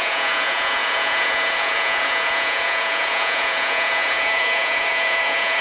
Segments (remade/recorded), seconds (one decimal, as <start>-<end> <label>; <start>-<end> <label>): 0.0-5.6 remade